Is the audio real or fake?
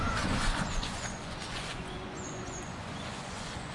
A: fake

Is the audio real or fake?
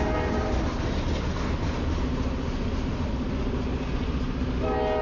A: real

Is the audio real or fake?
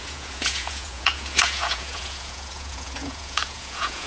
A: fake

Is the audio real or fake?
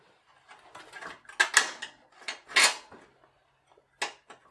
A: real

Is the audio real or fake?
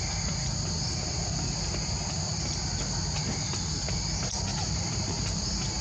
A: real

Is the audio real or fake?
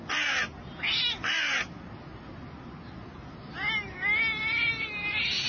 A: real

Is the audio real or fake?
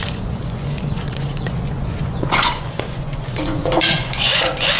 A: fake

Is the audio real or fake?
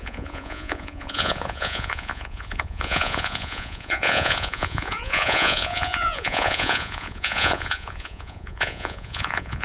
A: fake